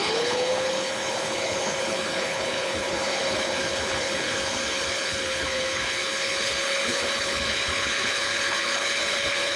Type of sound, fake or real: fake